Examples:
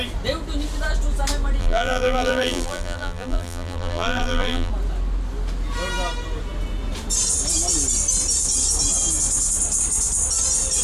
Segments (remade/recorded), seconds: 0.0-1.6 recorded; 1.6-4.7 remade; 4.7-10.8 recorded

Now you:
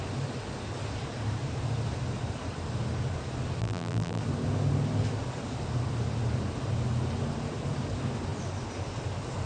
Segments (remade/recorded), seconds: 0.0-3.6 recorded; 3.6-4.2 remade; 4.2-9.5 recorded